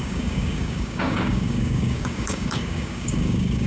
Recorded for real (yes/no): no